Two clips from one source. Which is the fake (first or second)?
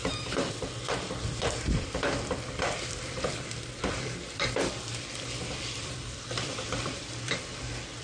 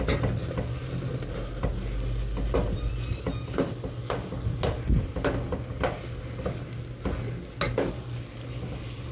first